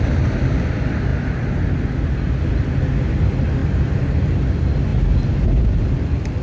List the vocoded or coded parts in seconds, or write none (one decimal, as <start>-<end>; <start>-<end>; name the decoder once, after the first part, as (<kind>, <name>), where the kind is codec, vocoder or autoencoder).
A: 3.6-4.5 (vocoder, BigVGAN v2)